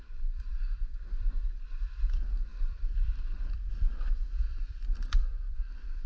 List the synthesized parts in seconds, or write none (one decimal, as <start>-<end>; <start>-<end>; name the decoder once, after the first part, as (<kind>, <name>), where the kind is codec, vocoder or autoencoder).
0.0-6.1 (vocoder, BigVGAN v2)